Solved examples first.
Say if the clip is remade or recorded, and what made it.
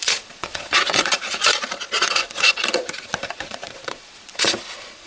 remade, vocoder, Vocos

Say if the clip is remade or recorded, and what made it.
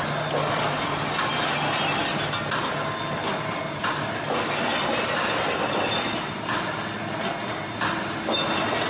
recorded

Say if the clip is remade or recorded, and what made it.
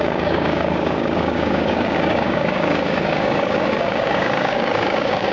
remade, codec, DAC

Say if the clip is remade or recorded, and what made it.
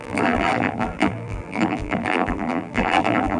remade, vocoder, BigVGAN v2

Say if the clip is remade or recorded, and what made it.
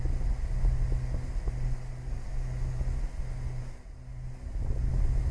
recorded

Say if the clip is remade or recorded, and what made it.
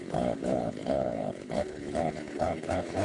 remade, codec, HILCodec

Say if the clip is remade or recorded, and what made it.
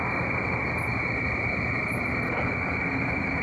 recorded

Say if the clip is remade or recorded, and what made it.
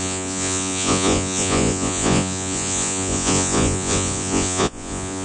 remade, vocoder, Vocos